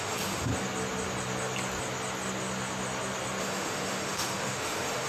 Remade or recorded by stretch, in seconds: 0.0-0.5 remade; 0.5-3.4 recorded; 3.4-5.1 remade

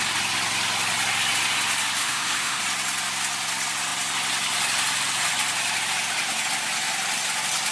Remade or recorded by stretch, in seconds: 0.0-2.0 recorded; 2.0-2.6 remade; 2.6-7.7 recorded

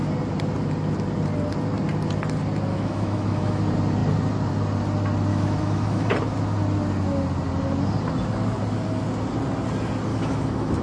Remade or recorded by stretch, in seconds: 0.0-2.7 recorded; 2.7-3.6 remade; 3.6-5.3 recorded; 5.3-6.1 remade; 6.1-10.1 recorded; 10.1-10.8 remade

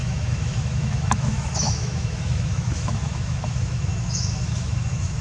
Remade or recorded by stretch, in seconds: 0.0-5.2 remade

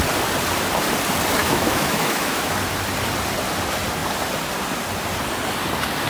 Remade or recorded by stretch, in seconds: 0.0-1.4 recorded; 1.4-2.5 remade; 2.5-6.1 recorded